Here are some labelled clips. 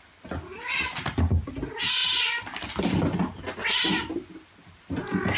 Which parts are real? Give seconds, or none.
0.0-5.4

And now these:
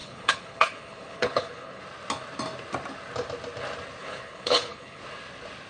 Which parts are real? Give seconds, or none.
1.8-4.0; 5.0-5.7